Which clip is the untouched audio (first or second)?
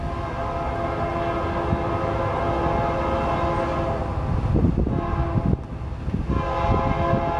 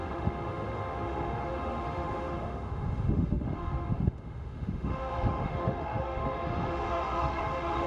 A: first